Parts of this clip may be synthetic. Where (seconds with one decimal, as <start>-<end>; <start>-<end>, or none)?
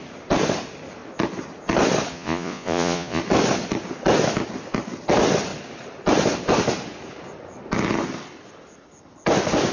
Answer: 2.1-3.2